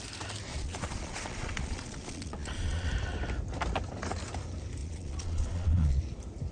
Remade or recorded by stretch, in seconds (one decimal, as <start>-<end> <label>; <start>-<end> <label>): 0.0-0.5 recorded; 0.5-2.9 remade; 2.9-4.8 recorded; 4.8-6.0 remade; 6.0-6.5 recorded